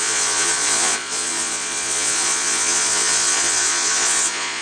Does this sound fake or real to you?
fake